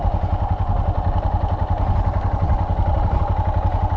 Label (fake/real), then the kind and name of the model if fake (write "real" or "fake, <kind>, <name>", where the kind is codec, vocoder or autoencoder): real